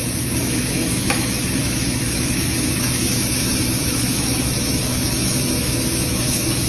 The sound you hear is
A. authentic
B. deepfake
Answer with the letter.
B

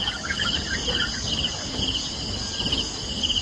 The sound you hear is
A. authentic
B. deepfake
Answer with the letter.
A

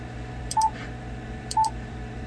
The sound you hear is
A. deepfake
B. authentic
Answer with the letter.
A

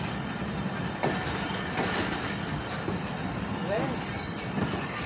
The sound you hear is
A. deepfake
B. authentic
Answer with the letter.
B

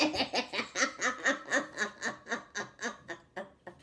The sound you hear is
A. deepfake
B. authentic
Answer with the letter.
B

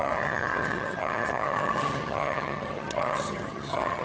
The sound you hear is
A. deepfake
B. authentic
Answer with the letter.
A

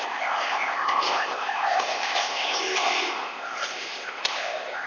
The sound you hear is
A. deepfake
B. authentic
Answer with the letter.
A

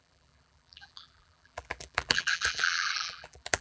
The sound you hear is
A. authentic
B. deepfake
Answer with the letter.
B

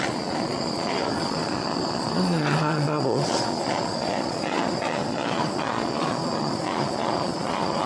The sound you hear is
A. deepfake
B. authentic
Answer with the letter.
A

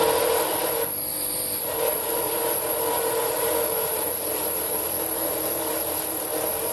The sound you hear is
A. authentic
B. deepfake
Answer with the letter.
A